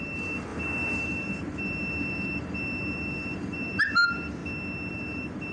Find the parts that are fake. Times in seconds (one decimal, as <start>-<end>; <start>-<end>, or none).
0.0-4.4; 4.9-5.5